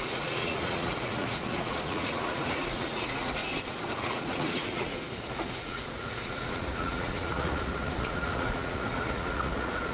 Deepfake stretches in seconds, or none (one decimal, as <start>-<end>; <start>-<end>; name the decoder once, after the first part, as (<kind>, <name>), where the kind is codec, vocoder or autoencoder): 0.0-3.4 (vocoder, Vocos); 4.0-9.9